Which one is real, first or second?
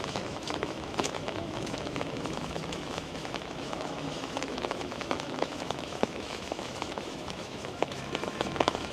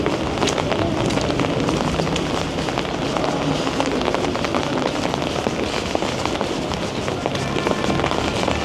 second